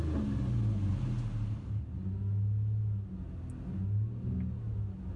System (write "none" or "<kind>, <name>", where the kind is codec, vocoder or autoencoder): none